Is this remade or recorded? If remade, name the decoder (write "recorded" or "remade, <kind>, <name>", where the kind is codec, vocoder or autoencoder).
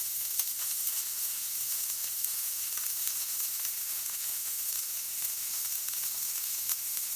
remade, autoencoder, DAC-VAE